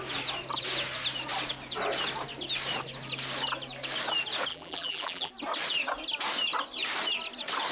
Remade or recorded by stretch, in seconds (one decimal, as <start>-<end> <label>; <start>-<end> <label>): 0.0-4.5 recorded; 4.5-5.3 remade; 5.3-7.7 recorded